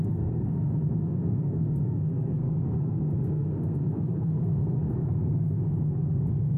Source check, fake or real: fake